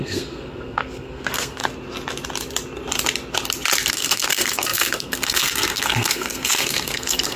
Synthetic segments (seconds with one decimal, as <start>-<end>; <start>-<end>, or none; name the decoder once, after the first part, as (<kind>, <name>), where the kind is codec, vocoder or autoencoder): 0.0-1.6 (codec, SNAC); 3.9-7.4